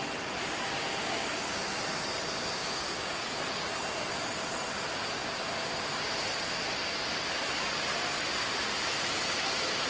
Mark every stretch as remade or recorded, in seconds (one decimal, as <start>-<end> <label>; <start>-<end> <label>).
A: 0.0-1.0 recorded; 1.0-1.6 remade; 1.6-2.6 recorded; 2.6-3.4 remade; 3.4-9.9 recorded

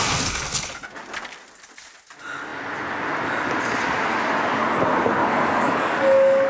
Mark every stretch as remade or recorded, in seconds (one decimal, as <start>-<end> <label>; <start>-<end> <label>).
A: 0.0-5.2 recorded; 5.2-6.5 remade

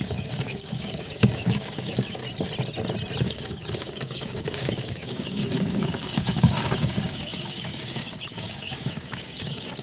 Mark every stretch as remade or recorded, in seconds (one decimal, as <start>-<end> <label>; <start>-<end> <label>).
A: 0.0-2.2 remade; 2.2-3.2 recorded; 3.2-9.8 remade

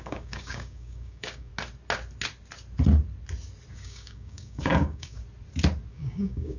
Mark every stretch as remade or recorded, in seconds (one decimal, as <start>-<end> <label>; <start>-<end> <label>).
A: 0.0-1.5 remade; 1.5-3.7 recorded; 3.7-5.2 remade; 5.2-5.9 recorded; 5.9-6.6 remade

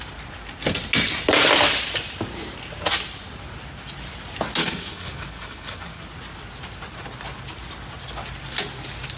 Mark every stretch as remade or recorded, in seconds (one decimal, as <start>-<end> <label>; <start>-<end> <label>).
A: 0.0-4.6 recorded; 4.6-6.0 remade; 6.0-9.2 recorded